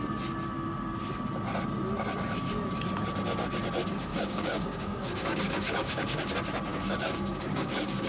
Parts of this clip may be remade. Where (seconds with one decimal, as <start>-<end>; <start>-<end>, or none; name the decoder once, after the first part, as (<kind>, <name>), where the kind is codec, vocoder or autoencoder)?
4.1-6.3 (codec, DAC); 6.7-8.1